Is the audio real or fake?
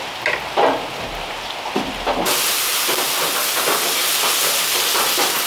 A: real